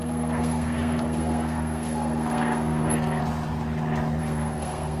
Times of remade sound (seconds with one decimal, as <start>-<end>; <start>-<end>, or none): 0.0-3.2; 4.2-5.0